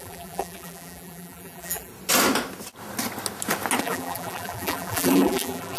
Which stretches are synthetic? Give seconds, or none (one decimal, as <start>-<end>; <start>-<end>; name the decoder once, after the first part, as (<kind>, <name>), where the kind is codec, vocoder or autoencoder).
0.0-1.9 (vocoder, BigVGAN v2); 3.8-5.8